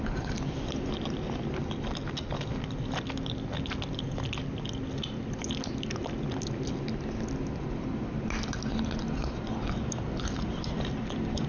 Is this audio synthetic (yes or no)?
no